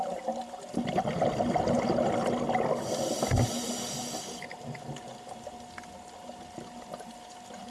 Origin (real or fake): real